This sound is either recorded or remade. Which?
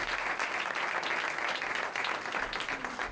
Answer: recorded